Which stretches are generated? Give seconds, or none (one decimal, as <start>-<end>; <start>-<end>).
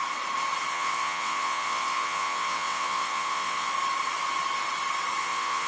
0.7-3.7; 5.2-5.7